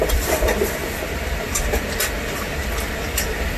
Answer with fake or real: fake